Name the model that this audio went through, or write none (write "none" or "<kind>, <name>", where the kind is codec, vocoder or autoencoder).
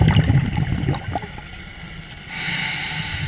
none